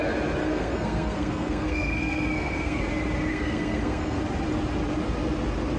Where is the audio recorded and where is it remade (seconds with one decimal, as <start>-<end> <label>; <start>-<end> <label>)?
0.0-0.4 recorded; 0.4-2.8 remade; 2.8-3.3 recorded; 3.3-4.2 remade; 4.2-5.8 recorded